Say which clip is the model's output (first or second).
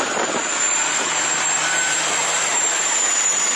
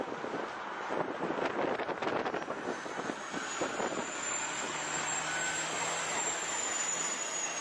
first